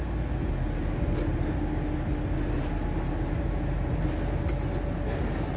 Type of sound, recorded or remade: recorded